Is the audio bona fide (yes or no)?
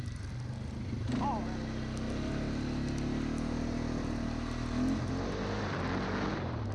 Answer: yes